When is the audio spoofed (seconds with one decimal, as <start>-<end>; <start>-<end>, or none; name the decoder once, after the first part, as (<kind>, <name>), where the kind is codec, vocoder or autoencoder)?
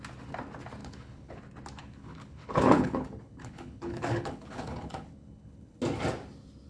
0.8-1.4 (codec, HILCodec); 1.8-5.8